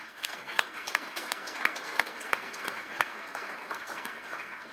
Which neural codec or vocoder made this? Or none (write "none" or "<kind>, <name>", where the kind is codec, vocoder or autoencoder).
codec, SNAC